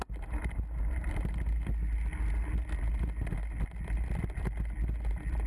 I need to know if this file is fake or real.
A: real